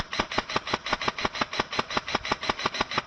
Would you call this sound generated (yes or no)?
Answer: no